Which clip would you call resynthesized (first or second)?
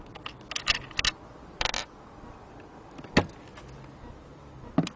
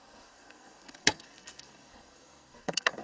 second